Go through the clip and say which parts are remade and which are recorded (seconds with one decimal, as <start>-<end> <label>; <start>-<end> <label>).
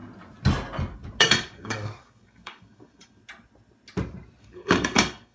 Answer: 0.0-1.2 recorded; 1.2-3.2 remade; 3.2-4.4 recorded; 4.4-5.3 remade